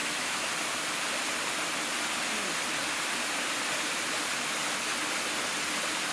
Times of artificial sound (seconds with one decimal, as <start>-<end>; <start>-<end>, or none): 0.0-0.5